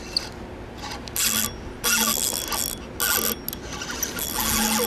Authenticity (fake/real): real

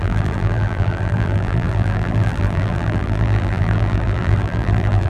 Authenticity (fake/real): fake